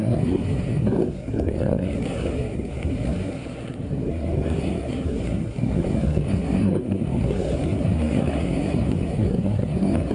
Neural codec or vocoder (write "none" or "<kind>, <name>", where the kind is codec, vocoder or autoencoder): codec, SNAC